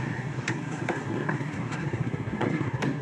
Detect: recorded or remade remade